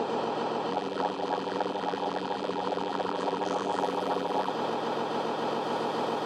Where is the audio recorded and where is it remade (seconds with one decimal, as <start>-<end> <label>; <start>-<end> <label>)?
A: 0.0-0.7 recorded; 0.7-4.5 remade; 4.5-6.3 recorded